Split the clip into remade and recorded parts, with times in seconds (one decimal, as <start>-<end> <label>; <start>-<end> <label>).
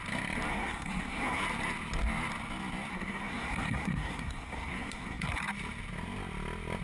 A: 0.0-0.5 recorded; 0.5-1.4 remade; 1.4-2.9 recorded; 2.9-5.4 remade; 5.4-6.8 recorded